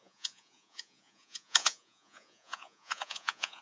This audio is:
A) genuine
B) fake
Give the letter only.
B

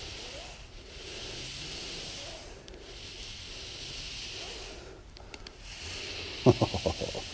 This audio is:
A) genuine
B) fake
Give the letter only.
A